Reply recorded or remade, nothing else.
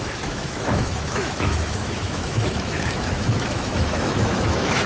remade